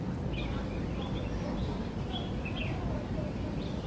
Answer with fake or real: real